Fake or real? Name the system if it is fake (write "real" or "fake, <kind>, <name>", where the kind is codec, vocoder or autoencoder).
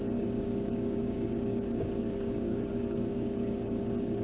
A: fake, codec, DAC